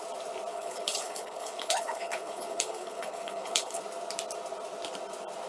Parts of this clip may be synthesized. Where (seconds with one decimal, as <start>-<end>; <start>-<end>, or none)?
0.5-3.8